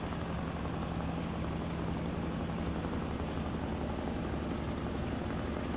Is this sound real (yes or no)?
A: yes